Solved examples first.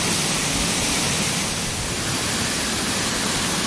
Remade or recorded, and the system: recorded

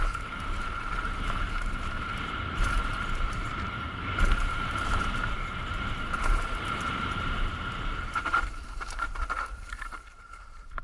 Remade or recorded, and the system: remade, vocoder, BigVGAN v2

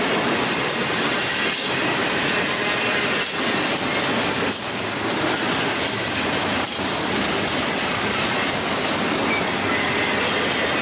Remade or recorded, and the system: recorded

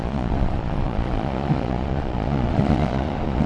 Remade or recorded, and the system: remade, vocoder, Vocos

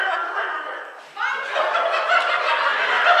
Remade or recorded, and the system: recorded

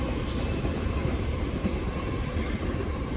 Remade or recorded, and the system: recorded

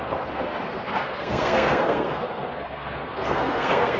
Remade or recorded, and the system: remade, codec, SNAC